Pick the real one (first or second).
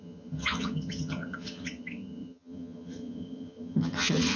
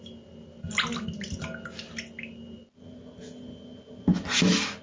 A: second